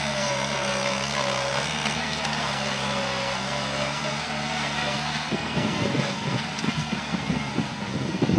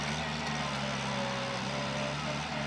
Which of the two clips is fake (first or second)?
first